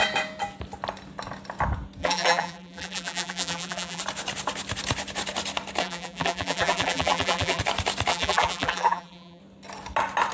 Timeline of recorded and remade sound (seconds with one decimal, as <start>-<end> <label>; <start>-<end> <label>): 0.0-2.0 recorded; 2.0-4.0 remade; 4.0-5.8 recorded; 5.8-7.6 remade; 7.6-8.1 recorded; 8.1-9.4 remade; 9.4-10.3 recorded